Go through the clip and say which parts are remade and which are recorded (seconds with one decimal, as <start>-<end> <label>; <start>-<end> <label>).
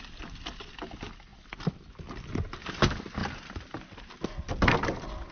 0.0-5.3 recorded